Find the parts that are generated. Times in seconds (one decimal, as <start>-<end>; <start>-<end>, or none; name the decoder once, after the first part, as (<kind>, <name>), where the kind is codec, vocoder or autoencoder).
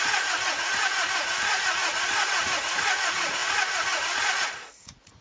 0.0-5.2 (vocoder, Vocos)